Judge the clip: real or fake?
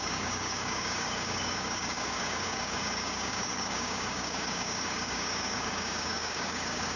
fake